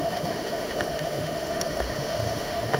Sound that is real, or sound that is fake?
fake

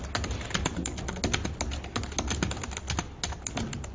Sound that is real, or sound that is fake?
real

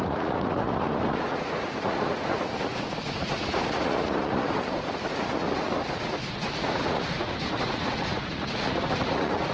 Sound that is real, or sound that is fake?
fake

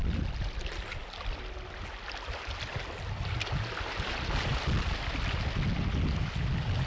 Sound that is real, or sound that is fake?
real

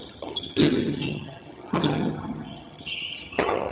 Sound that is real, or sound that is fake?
fake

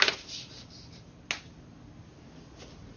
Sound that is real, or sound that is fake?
real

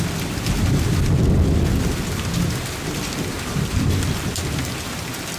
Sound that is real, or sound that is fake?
real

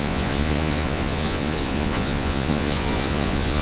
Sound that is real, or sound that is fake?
fake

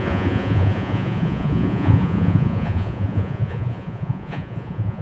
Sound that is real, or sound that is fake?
fake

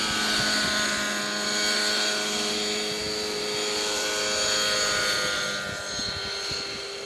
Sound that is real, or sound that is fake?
real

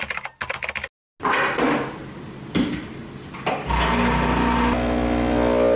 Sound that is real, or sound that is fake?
real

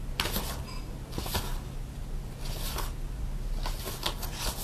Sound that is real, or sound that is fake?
real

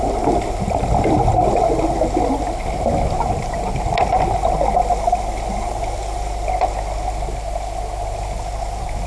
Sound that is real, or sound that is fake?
real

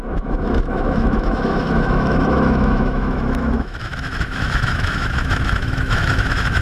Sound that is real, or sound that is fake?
fake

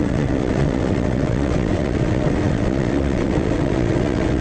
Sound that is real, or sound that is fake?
fake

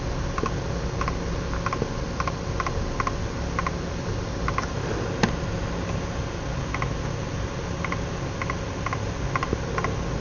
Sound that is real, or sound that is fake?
real